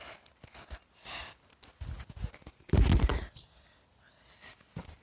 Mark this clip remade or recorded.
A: recorded